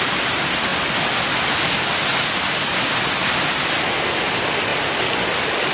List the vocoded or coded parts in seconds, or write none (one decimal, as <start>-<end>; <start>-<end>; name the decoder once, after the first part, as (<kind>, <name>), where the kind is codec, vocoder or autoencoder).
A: none